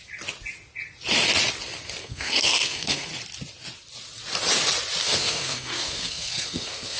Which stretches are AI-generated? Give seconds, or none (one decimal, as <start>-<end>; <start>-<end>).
2.0-3.1; 5.0-7.0